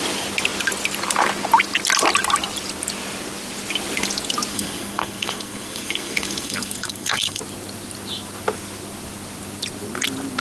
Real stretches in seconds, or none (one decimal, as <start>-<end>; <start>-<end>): 0.0-4.5; 7.4-10.4